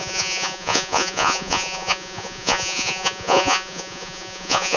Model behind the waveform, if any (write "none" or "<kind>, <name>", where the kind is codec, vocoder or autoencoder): vocoder, Vocos